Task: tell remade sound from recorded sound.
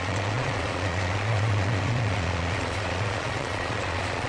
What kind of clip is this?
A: remade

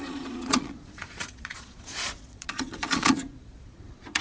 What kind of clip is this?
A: remade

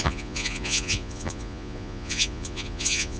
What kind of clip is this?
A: remade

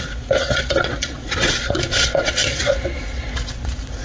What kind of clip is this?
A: remade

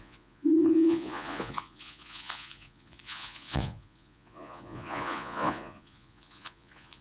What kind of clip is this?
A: remade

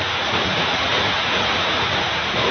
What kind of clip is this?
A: remade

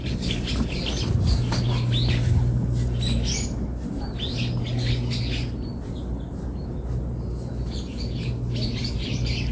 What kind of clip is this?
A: recorded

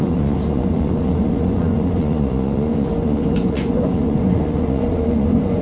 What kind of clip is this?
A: remade